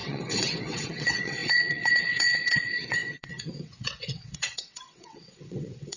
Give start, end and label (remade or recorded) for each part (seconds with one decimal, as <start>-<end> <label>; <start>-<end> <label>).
0.0-6.0 remade